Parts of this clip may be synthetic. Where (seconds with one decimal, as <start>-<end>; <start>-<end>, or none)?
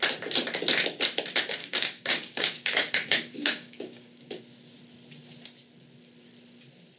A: 1.6-4.4